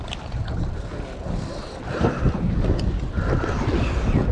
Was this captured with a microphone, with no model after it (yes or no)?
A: yes